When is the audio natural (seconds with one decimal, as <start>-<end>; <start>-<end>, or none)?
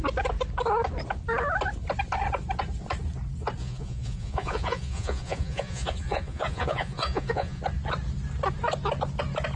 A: 0.0-3.6; 7.6-9.6